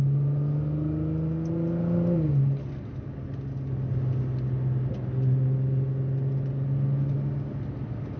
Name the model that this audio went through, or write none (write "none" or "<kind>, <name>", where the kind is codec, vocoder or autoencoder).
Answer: none